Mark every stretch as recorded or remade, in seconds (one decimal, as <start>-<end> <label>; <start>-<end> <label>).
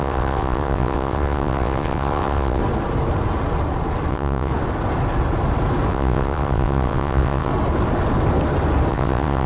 0.0-2.6 remade; 2.6-4.1 recorded; 4.1-4.5 remade; 4.5-5.9 recorded; 5.9-7.5 remade; 7.5-8.9 recorded; 8.9-9.5 remade